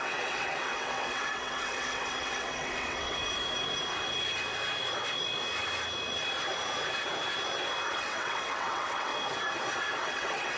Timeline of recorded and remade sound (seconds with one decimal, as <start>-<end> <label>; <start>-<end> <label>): 0.0-3.2 remade; 3.2-7.9 recorded; 7.9-9.1 remade; 9.1-10.1 recorded; 10.1-10.6 remade